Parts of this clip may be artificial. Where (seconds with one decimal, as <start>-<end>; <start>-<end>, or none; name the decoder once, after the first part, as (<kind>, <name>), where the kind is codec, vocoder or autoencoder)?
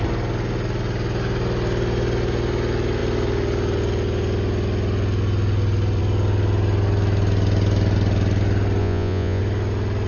8.8-9.4 (vocoder, Vocos)